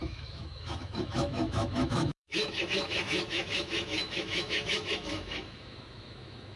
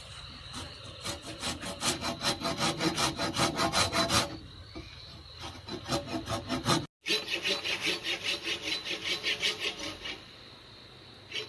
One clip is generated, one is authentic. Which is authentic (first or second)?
second